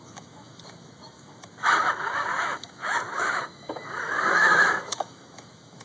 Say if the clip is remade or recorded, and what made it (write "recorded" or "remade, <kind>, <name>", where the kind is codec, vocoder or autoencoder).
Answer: remade, autoencoder, DAC-VAE